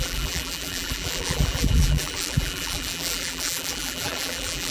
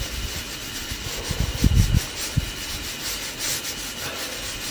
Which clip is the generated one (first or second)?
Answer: first